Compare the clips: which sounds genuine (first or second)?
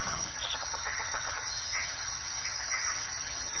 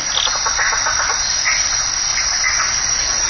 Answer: second